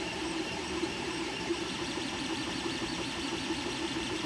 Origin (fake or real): fake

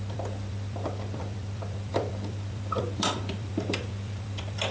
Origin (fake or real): fake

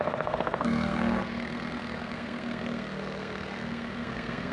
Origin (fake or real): fake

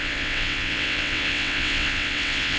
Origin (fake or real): fake